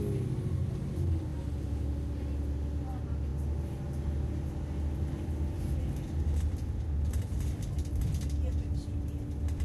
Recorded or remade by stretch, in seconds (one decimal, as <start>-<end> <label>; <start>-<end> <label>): 0.0-9.6 recorded